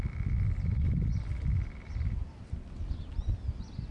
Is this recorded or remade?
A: recorded